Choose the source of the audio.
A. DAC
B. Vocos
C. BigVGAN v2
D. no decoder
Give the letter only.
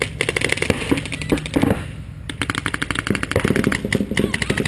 D